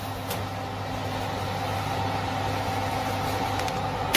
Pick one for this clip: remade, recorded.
recorded